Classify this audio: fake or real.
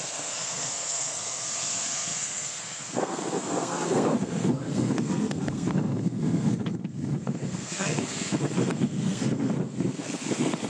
fake